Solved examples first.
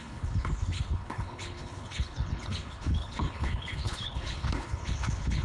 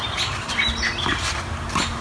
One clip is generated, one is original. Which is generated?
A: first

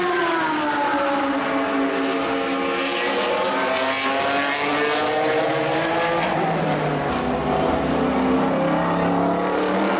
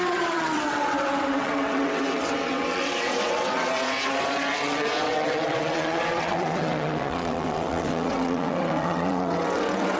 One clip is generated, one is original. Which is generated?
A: second